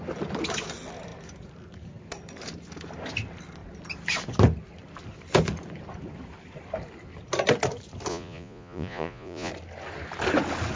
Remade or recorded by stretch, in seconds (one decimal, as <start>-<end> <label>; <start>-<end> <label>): 0.0-8.1 recorded; 8.1-9.5 remade; 9.5-10.8 recorded